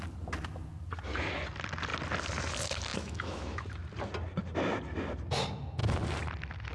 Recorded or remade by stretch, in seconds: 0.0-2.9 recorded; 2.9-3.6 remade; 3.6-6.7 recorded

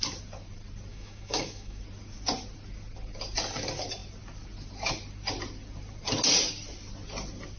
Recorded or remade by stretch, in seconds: 0.0-0.9 recorded; 0.9-1.8 remade; 1.8-7.6 recorded